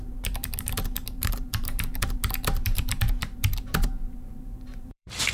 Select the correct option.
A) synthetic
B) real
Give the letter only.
A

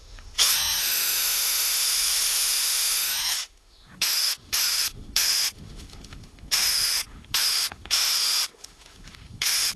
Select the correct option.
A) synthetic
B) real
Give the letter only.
A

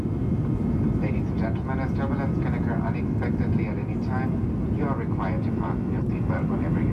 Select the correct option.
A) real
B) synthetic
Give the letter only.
A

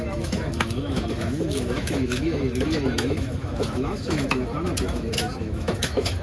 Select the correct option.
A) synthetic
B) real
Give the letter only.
A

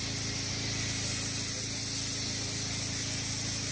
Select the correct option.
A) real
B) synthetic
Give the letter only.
A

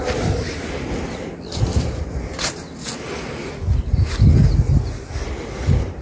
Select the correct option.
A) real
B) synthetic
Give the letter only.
A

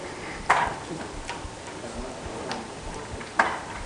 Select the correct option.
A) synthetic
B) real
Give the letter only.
B